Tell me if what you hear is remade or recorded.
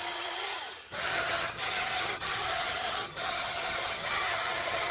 remade